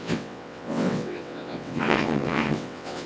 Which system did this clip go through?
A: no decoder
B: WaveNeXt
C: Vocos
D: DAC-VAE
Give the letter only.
B